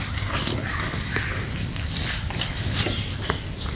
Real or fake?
real